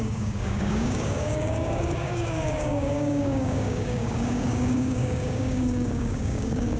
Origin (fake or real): fake